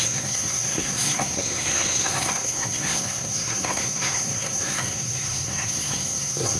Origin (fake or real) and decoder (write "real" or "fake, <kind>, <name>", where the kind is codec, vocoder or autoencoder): fake, codec, SNAC